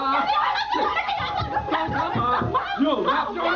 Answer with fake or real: real